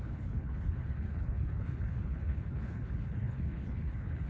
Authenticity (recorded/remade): remade